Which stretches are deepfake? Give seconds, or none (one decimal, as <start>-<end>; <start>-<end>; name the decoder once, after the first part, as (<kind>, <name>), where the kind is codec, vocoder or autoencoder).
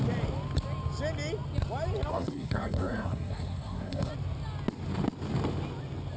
2.1-4.1 (codec, SNAC)